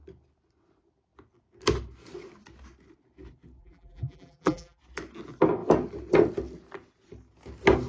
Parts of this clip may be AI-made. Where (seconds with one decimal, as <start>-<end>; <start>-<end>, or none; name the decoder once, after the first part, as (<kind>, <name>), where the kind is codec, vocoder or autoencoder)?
3.6-4.8 (vocoder, BigVGAN v2)